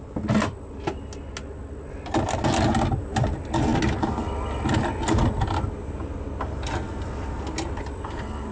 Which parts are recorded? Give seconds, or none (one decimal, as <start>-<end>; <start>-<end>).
0.0-8.5